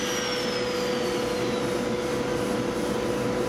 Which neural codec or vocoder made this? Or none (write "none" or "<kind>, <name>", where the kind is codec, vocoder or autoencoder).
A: none